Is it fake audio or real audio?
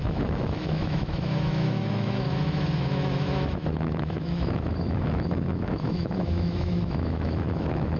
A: fake